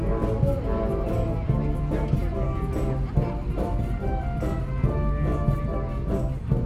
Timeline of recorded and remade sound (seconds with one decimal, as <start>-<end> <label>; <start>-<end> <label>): 0.0-6.7 recorded